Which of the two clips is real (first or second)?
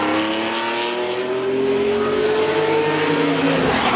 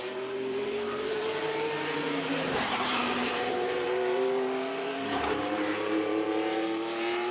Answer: first